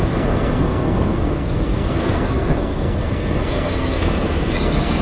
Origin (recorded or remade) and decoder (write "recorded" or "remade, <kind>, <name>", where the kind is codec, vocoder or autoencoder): remade, codec, SNAC